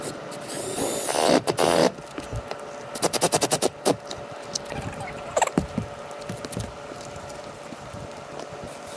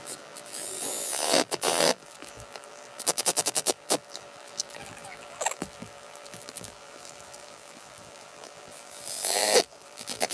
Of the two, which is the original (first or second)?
first